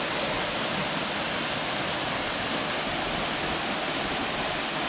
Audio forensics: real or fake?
real